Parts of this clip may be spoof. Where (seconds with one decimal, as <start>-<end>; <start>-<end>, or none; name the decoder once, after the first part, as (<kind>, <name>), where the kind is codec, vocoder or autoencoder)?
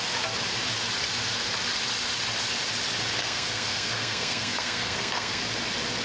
3.2-5.4 (codec, SNAC)